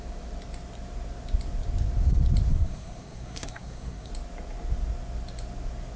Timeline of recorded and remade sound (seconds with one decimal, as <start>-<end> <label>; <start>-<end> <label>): 0.0-2.5 recorded; 2.5-4.1 remade; 4.1-6.0 recorded